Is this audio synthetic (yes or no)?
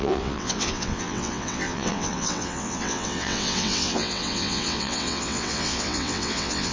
yes